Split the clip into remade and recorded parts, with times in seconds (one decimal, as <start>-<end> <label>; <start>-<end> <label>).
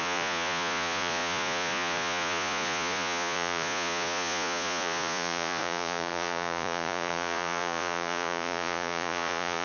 0.0-9.6 remade